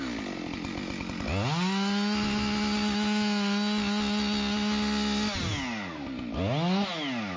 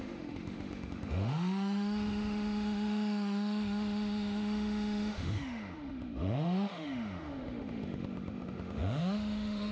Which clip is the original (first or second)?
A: first